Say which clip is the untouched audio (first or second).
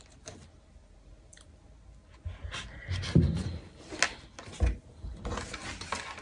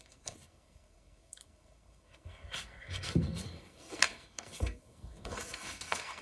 first